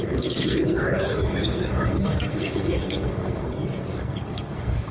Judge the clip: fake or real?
fake